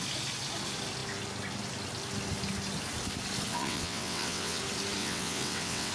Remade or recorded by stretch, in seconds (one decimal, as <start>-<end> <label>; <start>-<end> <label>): 0.0-3.5 recorded; 3.5-4.6 remade; 4.6-5.0 recorded; 5.0-5.9 remade